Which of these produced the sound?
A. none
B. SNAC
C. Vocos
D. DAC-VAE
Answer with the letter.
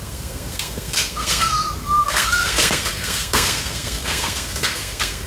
B